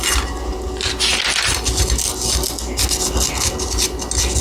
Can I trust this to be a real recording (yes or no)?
yes